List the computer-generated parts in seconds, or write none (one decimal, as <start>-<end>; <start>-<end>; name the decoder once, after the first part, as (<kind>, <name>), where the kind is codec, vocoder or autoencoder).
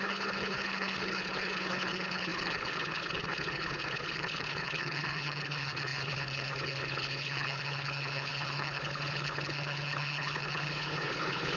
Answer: 0.0-11.6 (codec, HILCodec)